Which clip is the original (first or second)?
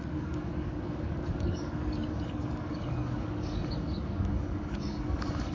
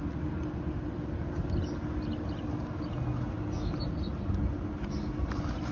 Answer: second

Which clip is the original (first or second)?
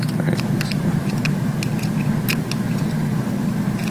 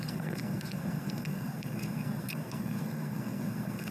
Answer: first